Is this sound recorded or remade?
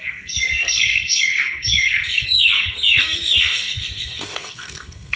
remade